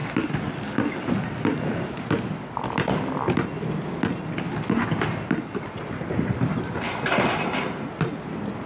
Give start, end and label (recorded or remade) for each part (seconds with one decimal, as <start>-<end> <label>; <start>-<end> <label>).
0.0-8.7 recorded